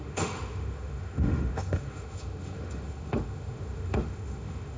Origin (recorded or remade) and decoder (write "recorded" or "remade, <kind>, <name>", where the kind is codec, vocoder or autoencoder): remade, autoencoder, DAC-VAE